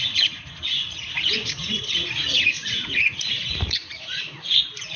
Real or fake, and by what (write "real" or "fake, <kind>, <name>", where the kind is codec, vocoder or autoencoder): fake, vocoder, Vocos